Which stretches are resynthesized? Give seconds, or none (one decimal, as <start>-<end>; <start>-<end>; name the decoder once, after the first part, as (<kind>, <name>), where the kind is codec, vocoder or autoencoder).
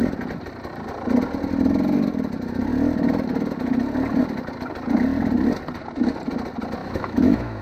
6.8-7.6 (autoencoder, DAC-VAE)